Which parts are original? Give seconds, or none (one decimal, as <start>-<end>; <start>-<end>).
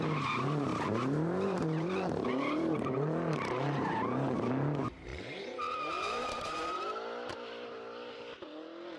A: 0.0-0.7; 4.5-5.1; 6.8-9.0